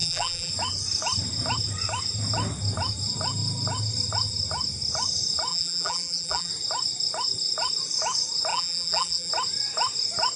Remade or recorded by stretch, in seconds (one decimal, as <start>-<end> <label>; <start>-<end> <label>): 0.0-0.5 remade; 0.5-5.5 recorded; 5.5-6.5 remade; 6.5-8.5 recorded; 8.5-9.3 remade; 9.3-10.4 recorded